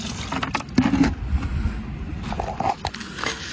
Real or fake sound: real